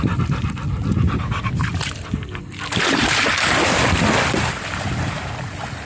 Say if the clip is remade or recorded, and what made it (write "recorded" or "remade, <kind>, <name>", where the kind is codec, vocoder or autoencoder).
recorded